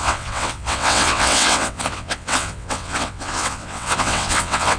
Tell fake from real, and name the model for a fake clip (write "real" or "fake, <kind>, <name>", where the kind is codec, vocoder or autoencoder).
fake, vocoder, WaveNeXt